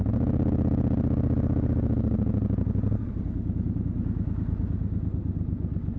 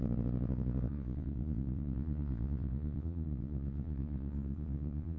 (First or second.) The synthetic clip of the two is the second